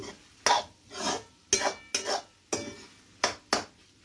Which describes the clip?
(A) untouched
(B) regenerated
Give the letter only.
A